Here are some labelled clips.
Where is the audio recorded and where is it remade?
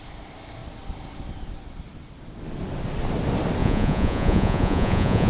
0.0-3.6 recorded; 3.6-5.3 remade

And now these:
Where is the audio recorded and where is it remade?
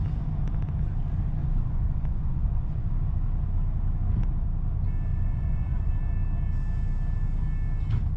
0.0-1.4 recorded; 1.4-2.9 remade; 2.9-5.1 recorded; 5.1-5.9 remade; 5.9-8.2 recorded